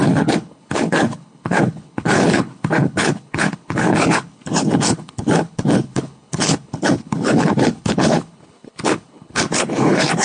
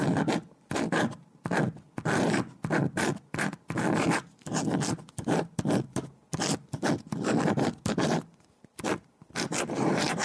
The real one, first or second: second